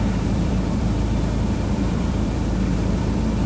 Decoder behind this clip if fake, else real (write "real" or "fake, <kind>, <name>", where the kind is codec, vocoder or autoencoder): fake, vocoder, BigVGAN v2